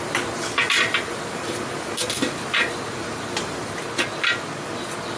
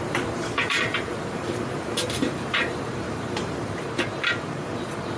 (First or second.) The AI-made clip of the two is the second